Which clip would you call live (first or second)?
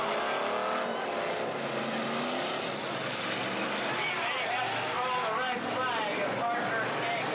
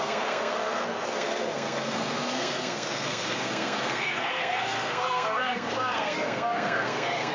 first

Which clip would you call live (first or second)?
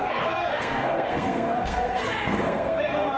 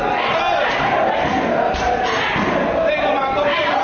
second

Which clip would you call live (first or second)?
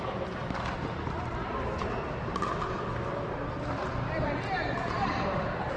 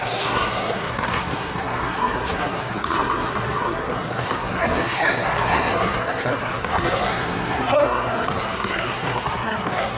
first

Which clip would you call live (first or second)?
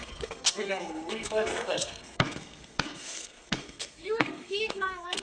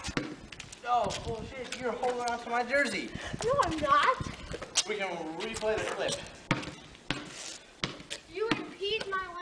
second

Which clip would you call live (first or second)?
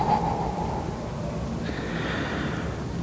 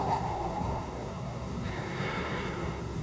first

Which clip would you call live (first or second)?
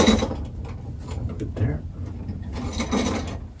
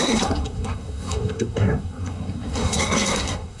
first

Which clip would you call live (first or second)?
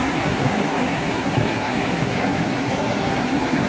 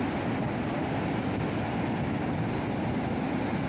second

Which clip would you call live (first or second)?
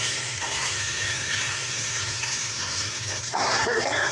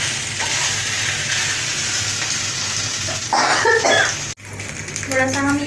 second